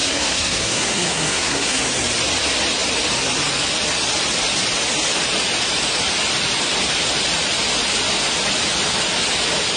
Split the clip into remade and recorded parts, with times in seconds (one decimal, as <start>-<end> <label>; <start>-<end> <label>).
0.0-1.8 remade; 1.8-9.8 recorded